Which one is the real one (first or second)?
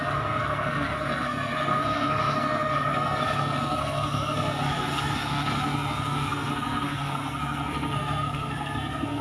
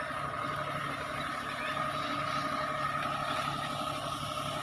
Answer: second